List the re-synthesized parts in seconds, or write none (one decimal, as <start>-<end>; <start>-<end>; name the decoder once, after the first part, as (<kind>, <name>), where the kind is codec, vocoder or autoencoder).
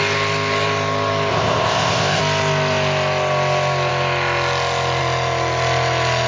1.3-2.2 (codec, ZipCodec)